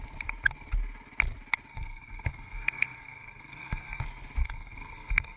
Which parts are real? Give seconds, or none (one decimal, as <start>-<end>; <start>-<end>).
0.0-1.7; 4.0-4.4